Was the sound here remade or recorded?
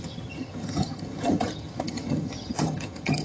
remade